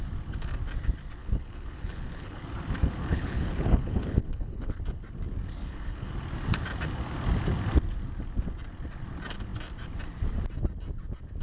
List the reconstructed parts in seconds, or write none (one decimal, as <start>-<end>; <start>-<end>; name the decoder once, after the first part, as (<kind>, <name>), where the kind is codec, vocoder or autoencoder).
1.2-2.4 (codec, HILCodec); 3.0-4.8; 5.6-6.1